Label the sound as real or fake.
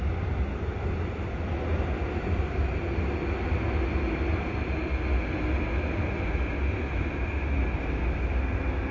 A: real